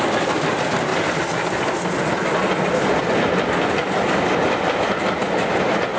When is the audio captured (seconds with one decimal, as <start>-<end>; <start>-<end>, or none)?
0.0-6.0